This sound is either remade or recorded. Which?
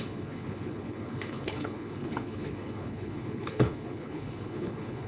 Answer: remade